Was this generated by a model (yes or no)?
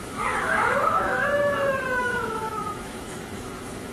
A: yes